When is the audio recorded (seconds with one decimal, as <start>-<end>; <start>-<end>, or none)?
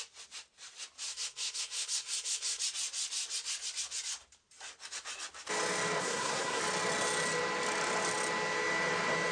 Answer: 0.0-1.1; 2.6-6.0; 6.6-9.3